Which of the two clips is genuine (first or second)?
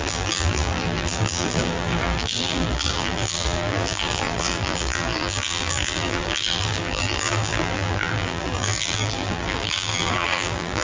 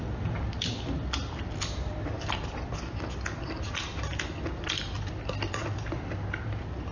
second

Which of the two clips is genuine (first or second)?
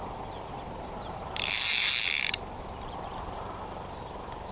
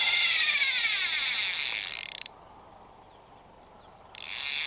second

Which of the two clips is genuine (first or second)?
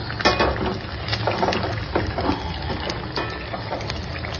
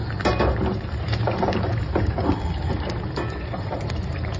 first